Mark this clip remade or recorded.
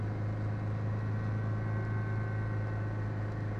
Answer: recorded